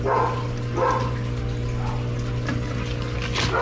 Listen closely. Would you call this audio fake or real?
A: real